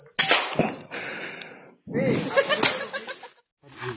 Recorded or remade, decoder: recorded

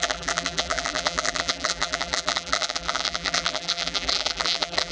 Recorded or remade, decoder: remade, vocoder, BigVGAN v2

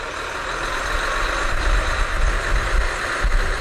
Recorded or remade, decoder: recorded